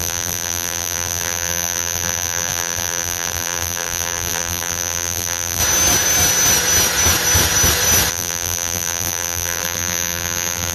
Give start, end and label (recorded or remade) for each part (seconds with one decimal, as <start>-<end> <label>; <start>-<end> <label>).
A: 0.0-5.6 remade; 5.6-8.1 recorded; 8.1-10.7 remade